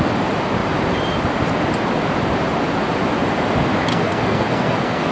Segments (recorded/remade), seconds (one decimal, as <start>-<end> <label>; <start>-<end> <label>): 0.0-3.9 recorded; 3.9-5.1 remade